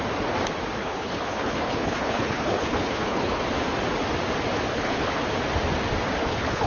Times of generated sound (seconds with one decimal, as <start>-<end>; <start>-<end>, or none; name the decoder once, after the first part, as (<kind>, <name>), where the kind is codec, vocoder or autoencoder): 0.8-3.4 (codec, HILCodec); 4.7-5.2; 6.2-6.7